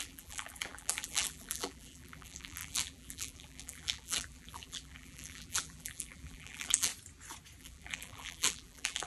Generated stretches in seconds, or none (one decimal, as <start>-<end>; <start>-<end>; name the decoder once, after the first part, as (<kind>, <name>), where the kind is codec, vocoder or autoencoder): 0.0-6.9 (vocoder, BigVGAN v2); 7.6-9.1